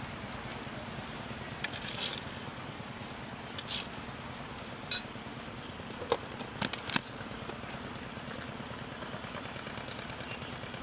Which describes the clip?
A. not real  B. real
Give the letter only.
B